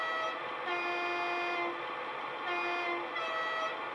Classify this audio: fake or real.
real